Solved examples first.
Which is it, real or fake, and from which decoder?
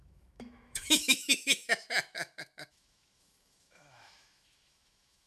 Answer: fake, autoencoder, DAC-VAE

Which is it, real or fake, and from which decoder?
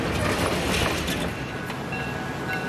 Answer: real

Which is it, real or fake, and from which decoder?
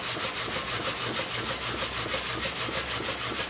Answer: real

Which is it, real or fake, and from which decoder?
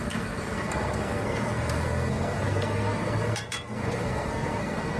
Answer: fake, codec, SNAC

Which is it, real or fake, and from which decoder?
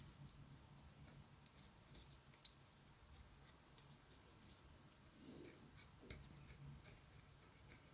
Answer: real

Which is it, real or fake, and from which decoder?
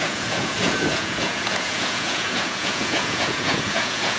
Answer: fake, vocoder, Vocos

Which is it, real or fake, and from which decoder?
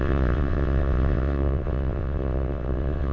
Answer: fake, vocoder, WaveNeXt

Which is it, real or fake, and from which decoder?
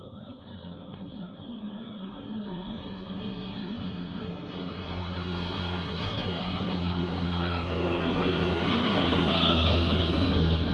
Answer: fake, codec, SNAC